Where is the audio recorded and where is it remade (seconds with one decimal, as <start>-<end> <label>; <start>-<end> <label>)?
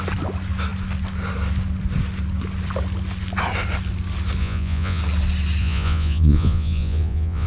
0.0-4.4 recorded; 4.4-5.0 remade; 5.0-5.6 recorded; 5.6-7.5 remade